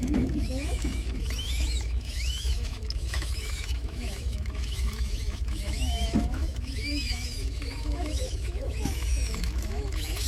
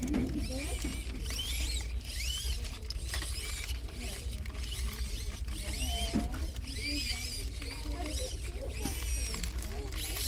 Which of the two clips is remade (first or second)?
first